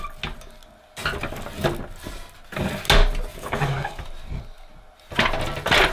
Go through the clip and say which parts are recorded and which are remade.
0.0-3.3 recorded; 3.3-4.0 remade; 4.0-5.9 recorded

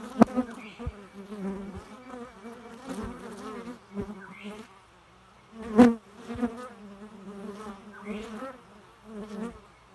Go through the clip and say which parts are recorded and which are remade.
0.0-9.9 recorded

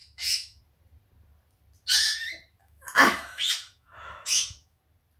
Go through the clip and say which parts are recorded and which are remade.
0.0-0.6 remade; 0.6-2.6 recorded; 2.6-4.8 remade; 4.8-5.2 recorded

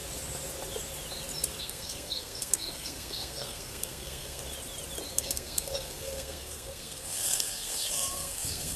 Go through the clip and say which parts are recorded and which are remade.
0.0-1.6 recorded; 1.6-4.4 remade; 4.4-5.1 recorded; 5.1-8.8 remade

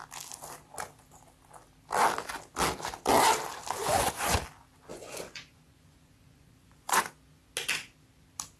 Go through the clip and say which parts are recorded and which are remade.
0.0-3.8 recorded; 3.8-4.4 remade; 4.4-4.9 recorded; 4.9-7.0 remade; 7.0-8.6 recorded

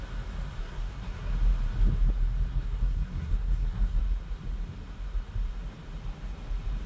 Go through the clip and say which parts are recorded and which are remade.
0.0-0.6 recorded; 0.6-1.3 remade; 1.3-2.5 recorded; 2.5-4.0 remade; 4.0-6.9 recorded

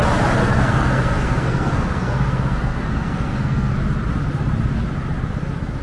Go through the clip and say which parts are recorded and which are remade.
0.0-0.4 recorded; 0.4-3.7 remade; 3.7-5.8 recorded